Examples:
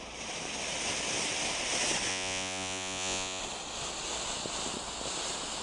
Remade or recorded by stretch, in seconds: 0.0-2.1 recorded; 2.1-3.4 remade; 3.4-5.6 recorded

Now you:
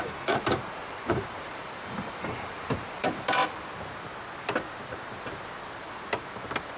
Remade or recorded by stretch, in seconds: 0.0-3.4 remade; 3.4-6.8 recorded